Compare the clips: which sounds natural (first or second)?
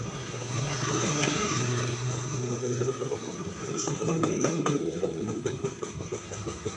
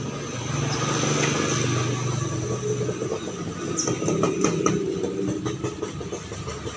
second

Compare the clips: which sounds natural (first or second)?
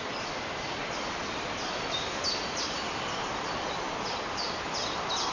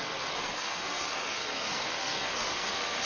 first